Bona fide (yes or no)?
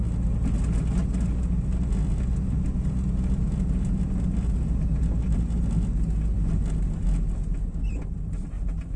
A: yes